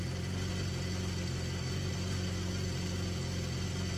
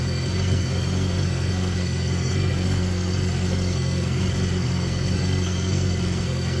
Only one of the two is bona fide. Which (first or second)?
first